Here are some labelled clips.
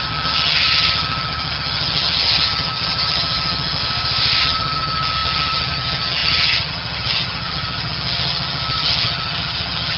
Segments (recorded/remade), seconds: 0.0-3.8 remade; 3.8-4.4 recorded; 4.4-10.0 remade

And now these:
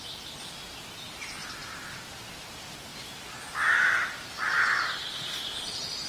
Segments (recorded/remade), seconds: 0.0-1.4 recorded; 1.4-2.5 remade; 2.5-6.1 recorded